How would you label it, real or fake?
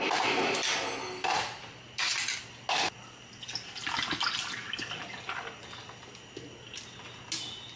real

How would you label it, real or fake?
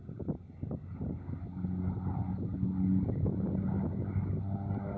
real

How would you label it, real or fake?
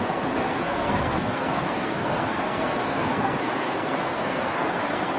fake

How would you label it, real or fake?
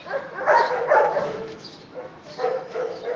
fake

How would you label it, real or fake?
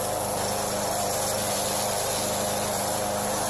real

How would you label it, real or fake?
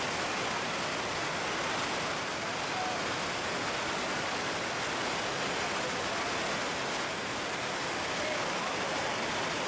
real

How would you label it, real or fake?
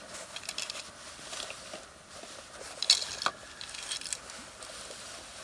real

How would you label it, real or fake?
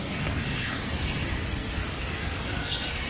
fake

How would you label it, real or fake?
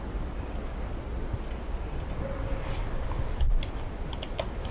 real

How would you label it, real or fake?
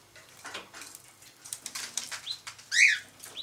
fake